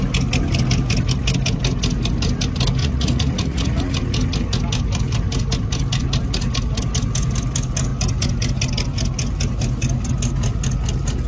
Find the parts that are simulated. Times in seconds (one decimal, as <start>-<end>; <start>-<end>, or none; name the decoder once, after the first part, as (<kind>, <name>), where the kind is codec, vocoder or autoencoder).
2.8-3.8 (vocoder, Vocos)